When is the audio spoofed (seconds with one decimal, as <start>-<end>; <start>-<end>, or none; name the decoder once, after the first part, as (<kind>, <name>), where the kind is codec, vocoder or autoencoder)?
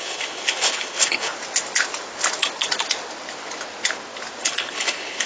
0.0-1.3 (codec, HILCodec); 4.4-5.3